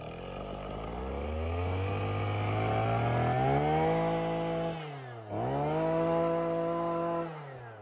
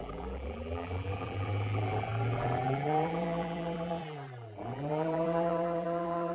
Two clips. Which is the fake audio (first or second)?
second